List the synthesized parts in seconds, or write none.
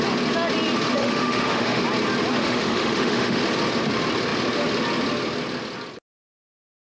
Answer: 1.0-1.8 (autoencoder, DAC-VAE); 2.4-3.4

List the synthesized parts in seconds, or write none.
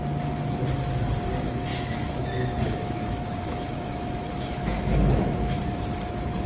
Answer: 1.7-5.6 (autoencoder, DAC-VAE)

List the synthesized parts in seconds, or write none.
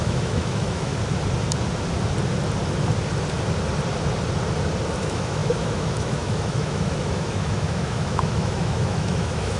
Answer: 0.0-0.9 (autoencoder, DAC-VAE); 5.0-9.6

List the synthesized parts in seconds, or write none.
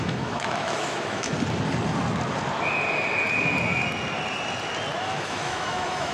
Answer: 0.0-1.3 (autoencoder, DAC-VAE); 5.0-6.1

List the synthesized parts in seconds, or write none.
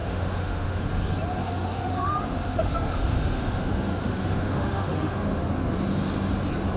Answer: 0.0-0.8 (autoencoder, DAC-VAE); 1.4-5.4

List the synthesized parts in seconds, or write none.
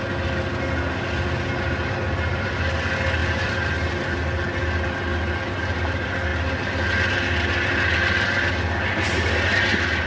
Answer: none